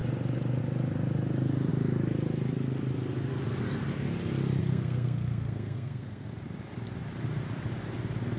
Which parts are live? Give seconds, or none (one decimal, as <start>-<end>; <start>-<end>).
0.0-4.6; 6.3-8.4

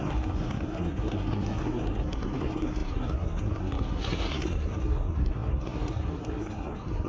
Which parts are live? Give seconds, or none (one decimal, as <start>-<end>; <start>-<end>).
none

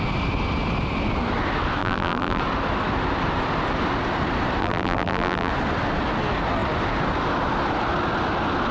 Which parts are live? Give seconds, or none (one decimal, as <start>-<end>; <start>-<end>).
0.0-1.8; 2.4-4.6; 5.5-8.7